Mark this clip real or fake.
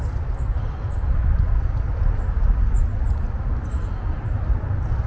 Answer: real